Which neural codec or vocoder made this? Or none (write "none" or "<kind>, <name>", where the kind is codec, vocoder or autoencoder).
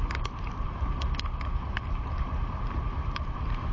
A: vocoder, BigVGAN v2